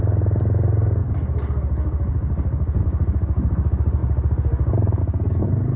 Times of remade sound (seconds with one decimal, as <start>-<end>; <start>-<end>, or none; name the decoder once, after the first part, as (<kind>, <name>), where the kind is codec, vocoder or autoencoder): none